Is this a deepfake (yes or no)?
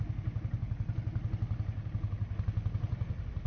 no